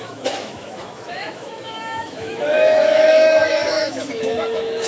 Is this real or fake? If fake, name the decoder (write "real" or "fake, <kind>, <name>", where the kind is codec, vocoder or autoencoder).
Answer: fake, autoencoder, DAC-VAE